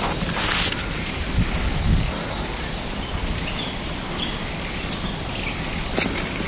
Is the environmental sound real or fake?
real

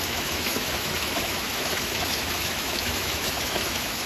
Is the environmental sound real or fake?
fake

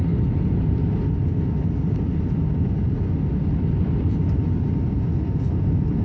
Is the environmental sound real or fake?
real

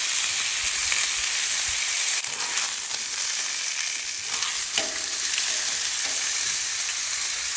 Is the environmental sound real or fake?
real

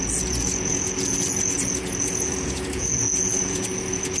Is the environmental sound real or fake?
fake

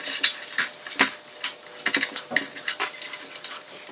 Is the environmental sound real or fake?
real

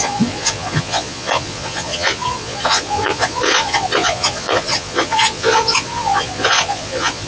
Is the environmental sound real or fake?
fake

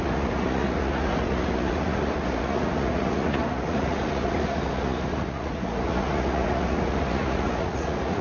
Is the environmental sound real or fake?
fake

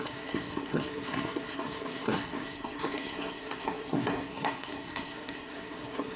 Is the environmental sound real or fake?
fake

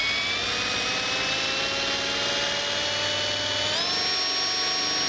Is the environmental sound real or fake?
real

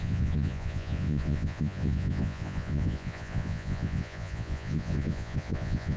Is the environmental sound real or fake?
fake